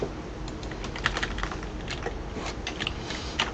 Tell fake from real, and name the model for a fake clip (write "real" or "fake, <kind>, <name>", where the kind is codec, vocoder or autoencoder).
real